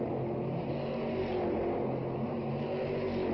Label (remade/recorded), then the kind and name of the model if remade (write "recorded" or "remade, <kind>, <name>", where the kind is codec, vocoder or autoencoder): recorded